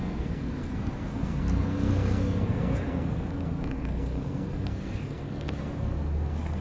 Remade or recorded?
remade